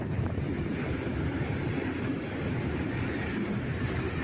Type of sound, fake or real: fake